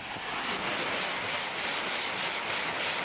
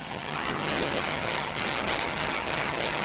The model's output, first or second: second